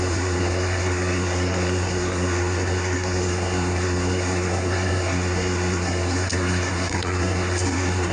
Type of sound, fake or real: fake